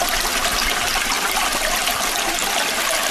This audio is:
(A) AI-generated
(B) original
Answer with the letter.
B